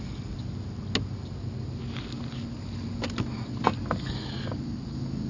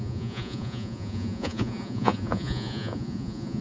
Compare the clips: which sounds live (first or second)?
first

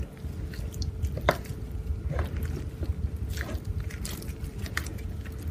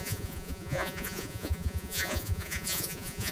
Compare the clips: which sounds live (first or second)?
first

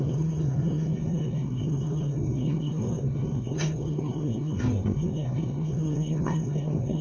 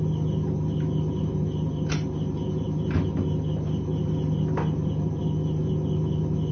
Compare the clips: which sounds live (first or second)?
second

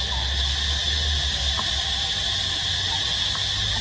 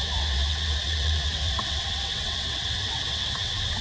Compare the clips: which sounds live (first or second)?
first